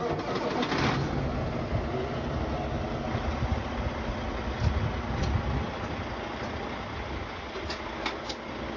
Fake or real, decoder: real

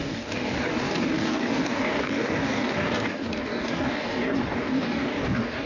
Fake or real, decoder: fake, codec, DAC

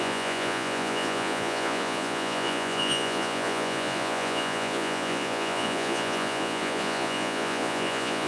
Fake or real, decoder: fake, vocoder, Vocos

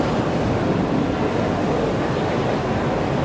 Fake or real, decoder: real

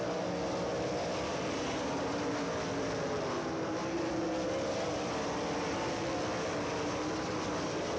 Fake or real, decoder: real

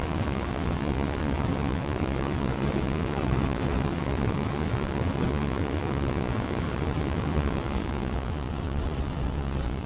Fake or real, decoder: fake, vocoder, WaveNeXt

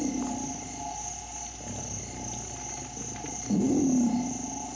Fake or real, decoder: real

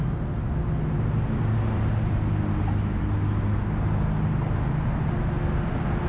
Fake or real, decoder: real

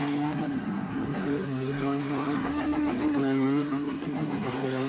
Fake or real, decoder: fake, codec, SNAC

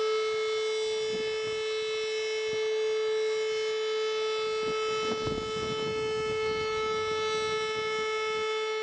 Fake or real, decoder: real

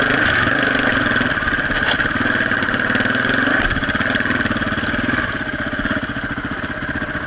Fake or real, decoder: real